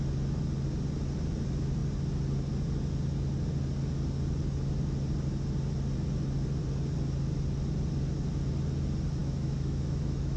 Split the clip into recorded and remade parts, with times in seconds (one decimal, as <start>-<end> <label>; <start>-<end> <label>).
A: 0.0-9.2 recorded; 9.2-10.4 remade